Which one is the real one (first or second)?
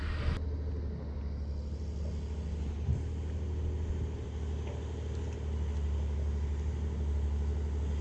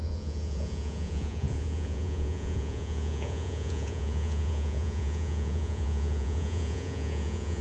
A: first